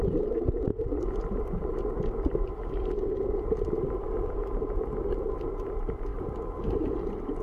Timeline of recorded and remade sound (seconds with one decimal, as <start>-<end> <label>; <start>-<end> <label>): 0.0-7.4 recorded